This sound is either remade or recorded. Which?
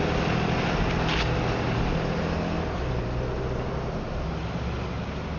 recorded